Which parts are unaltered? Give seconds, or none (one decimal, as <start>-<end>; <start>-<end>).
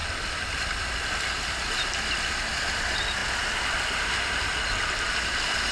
0.0-5.7